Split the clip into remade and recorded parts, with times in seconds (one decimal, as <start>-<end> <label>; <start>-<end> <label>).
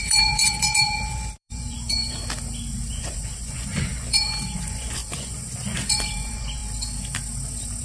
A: 0.0-2.2 remade; 2.2-2.9 recorded; 2.9-6.6 remade; 6.6-7.8 recorded